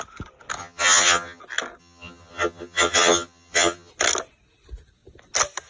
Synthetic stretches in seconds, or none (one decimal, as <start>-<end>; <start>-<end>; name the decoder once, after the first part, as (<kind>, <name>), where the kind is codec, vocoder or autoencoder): 0.6-1.4 (vocoder, HiFi-GAN); 1.8-3.9